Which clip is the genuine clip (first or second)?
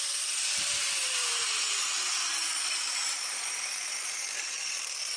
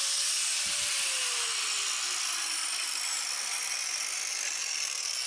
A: second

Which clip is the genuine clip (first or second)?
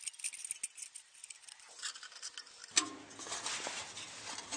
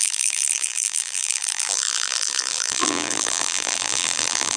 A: first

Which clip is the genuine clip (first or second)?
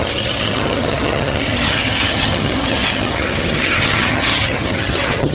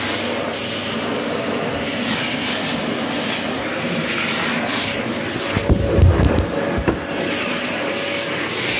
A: second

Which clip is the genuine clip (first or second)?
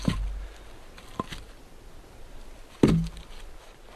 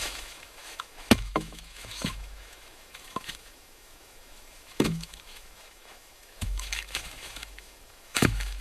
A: first